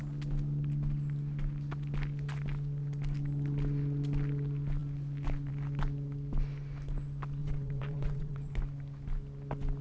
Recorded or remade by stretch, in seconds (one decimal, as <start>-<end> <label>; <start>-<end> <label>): 0.0-7.4 recorded; 7.4-8.6 remade; 8.6-9.8 recorded